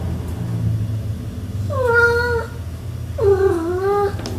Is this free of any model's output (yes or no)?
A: yes